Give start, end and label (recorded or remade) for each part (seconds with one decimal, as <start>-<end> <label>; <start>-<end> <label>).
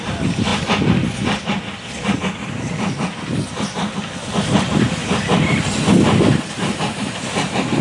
0.0-7.8 recorded